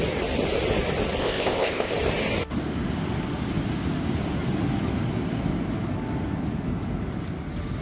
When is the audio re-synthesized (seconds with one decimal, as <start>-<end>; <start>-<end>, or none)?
1.2-1.9